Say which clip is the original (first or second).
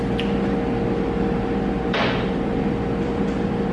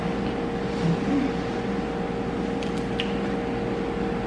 second